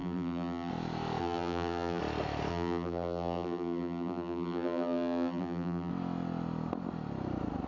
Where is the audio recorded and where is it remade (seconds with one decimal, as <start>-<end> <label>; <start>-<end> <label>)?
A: 0.0-0.7 remade; 0.7-1.2 recorded; 1.2-2.0 remade; 2.0-2.5 recorded; 2.5-5.9 remade; 5.9-7.7 recorded